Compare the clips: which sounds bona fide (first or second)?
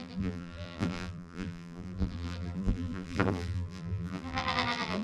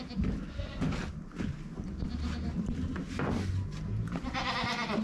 second